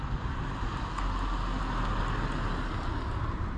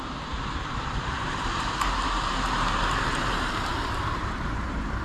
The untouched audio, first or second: first